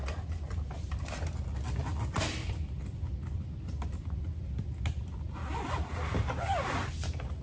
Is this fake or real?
real